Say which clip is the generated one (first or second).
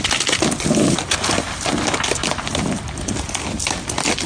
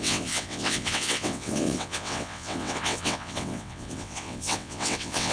second